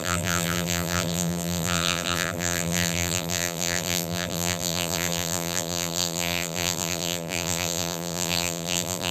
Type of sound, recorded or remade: remade